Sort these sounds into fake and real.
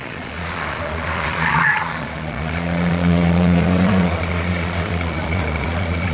fake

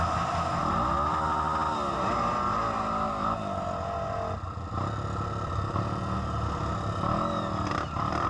real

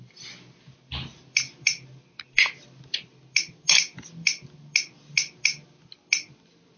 real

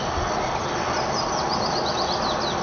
real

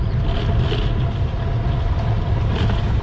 real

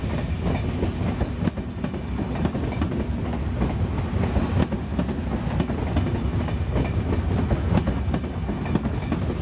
real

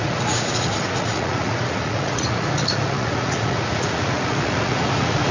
fake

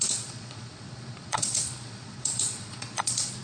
fake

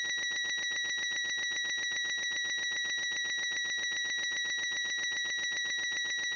real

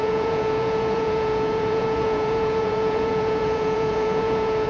fake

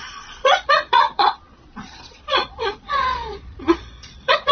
fake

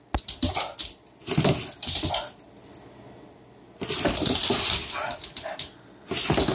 real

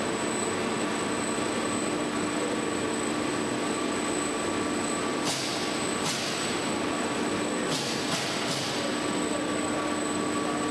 real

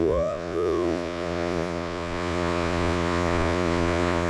fake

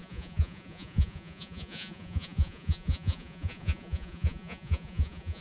fake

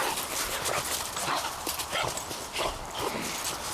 real